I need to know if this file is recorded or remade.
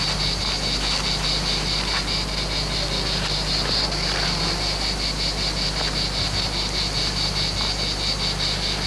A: remade